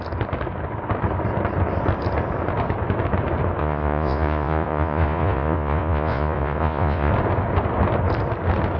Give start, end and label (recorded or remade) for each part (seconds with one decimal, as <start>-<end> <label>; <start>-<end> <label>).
0.0-3.6 recorded; 3.6-7.1 remade; 7.1-8.8 recorded